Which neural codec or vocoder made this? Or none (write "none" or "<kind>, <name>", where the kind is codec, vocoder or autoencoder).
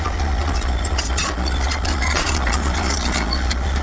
vocoder, Vocos